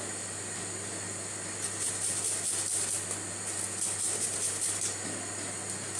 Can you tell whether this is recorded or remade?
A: recorded